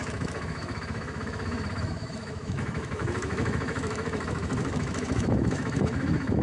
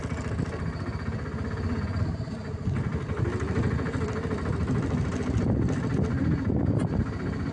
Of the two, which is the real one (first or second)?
second